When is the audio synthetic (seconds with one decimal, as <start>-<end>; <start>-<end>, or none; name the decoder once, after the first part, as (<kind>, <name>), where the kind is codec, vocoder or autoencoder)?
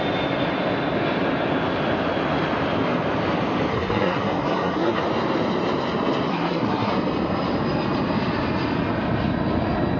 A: 3.7-5.0 (codec, SNAC); 6.3-6.9